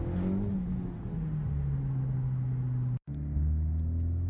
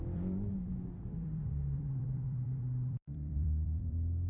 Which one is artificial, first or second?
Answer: second